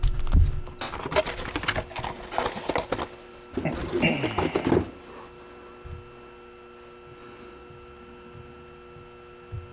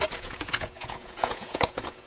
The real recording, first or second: first